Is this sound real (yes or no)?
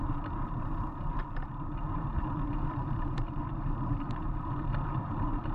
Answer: no